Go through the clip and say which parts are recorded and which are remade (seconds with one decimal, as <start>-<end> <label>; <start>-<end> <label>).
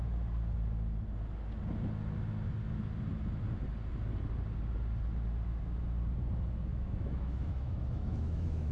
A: 0.0-6.7 recorded; 6.7-8.7 remade